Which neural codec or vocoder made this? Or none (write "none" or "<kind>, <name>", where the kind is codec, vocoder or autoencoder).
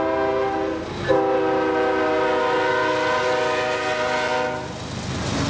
none